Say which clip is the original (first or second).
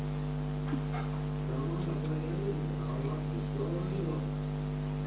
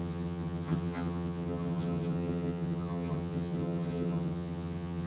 first